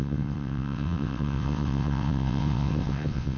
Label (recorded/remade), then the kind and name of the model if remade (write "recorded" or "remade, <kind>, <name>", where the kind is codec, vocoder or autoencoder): remade, vocoder, WaveNeXt